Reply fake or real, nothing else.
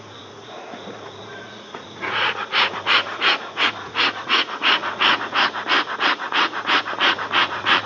fake